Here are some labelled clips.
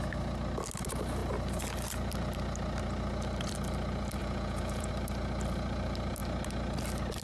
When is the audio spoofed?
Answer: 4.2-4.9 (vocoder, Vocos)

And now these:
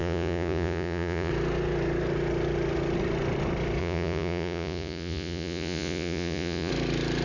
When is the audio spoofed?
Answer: 0.0-1.3 (vocoder, Vocos); 3.8-6.7

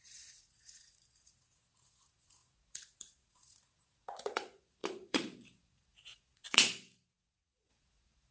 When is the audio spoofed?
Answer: 0.0-8.3 (vocoder, Vocos)

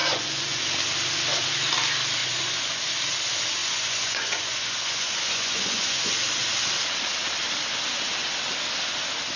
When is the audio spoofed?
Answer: 0.0-0.6 (vocoder, Vocos); 2.2-2.8; 3.6-6.1